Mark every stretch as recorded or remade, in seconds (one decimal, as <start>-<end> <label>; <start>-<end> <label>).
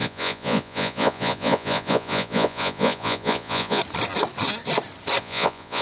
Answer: 0.0-3.8 remade; 3.8-5.2 recorded; 5.2-5.8 remade